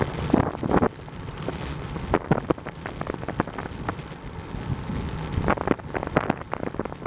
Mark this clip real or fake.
real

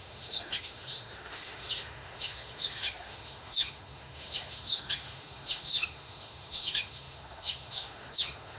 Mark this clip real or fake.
fake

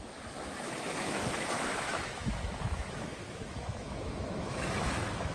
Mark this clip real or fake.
fake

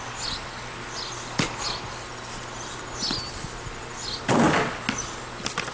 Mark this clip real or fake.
real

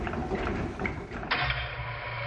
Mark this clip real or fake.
real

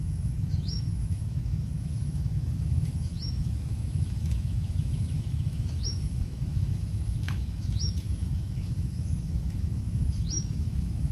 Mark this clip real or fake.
fake